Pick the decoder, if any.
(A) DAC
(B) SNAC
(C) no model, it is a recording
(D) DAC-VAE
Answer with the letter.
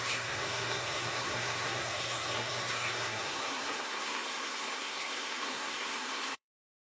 B